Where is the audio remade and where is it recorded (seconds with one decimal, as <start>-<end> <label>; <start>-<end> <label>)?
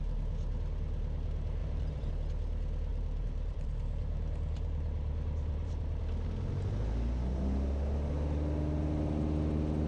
0.0-1.6 recorded; 1.6-2.1 remade; 2.1-2.9 recorded; 2.9-6.0 remade; 6.0-9.9 recorded